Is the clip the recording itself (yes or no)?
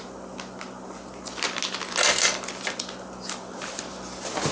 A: yes